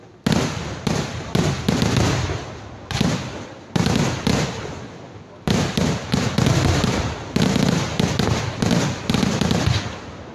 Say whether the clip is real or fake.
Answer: real